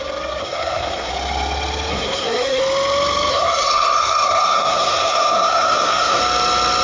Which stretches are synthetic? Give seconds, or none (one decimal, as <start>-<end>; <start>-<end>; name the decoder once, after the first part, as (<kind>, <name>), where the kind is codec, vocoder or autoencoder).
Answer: 0.4-1.1 (codec, SNAC); 1.9-2.6; 3.3-6.2